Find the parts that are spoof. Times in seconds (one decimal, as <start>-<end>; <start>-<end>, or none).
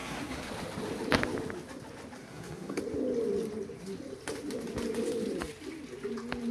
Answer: 0.0-0.5; 2.2-2.8